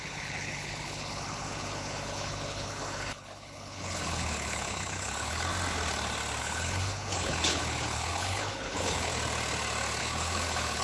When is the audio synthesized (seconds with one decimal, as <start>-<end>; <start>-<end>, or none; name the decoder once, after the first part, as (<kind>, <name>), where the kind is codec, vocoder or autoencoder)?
0.0-5.5 (codec, HILCodec); 6.4-9.1; 10.0-10.8